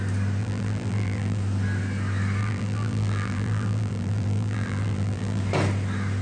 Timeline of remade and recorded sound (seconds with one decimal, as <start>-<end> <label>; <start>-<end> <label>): 0.0-0.4 recorded; 0.4-1.4 remade; 1.4-2.4 recorded; 2.4-5.4 remade; 5.4-6.2 recorded